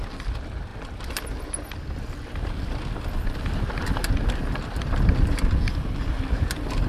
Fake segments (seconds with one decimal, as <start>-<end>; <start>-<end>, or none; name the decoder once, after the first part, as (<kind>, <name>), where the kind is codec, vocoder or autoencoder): none